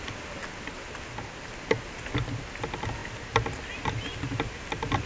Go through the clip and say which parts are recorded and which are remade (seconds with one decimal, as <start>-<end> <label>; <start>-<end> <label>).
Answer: 0.0-5.1 recorded